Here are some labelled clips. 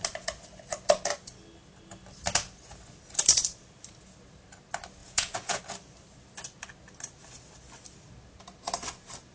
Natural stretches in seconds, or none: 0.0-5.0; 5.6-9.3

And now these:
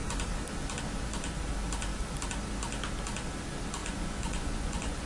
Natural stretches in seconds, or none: 0.0-3.8

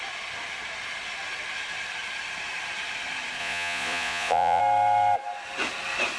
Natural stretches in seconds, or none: 0.0-3.4; 4.6-6.2

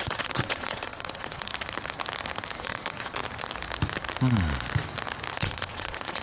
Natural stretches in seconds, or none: 1.5-2.6; 3.2-5.3